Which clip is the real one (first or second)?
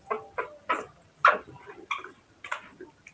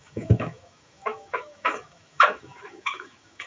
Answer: first